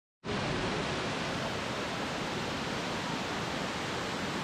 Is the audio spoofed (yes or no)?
no